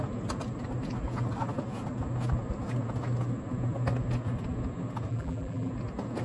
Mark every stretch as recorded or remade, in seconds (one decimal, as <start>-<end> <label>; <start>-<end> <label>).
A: 0.0-5.1 recorded; 5.1-5.7 remade; 5.7-6.2 recorded